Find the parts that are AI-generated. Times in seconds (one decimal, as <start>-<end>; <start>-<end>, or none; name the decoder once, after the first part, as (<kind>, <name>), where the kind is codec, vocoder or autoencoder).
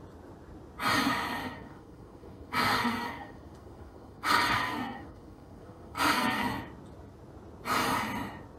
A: 1.4-6.6 (codec, SNAC)